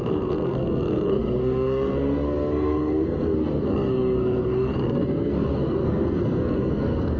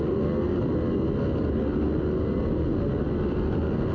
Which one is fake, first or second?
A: first